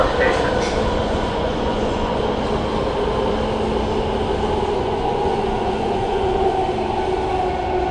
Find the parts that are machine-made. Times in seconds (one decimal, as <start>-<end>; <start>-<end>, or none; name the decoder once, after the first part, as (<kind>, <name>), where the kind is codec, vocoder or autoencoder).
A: 1.0-2.2 (vocoder, Vocos); 4.8-6.6